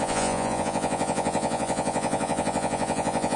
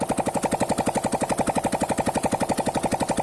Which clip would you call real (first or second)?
second